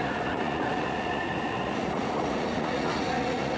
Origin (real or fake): fake